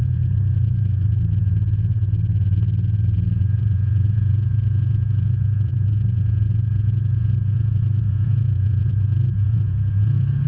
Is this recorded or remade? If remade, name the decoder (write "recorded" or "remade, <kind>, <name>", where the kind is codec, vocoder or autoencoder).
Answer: remade, vocoder, Vocos